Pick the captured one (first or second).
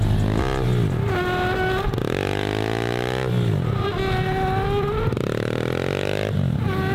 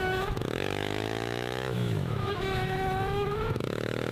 first